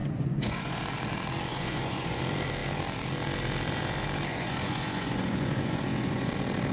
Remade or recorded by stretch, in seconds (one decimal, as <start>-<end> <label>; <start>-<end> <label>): 0.0-0.8 remade; 0.8-1.5 recorded; 1.5-2.2 remade; 2.2-4.3 recorded; 4.3-6.3 remade; 6.3-6.7 recorded